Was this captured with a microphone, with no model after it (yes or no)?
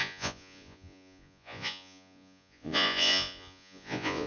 no